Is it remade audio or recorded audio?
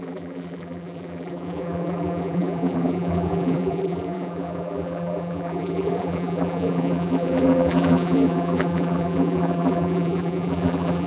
remade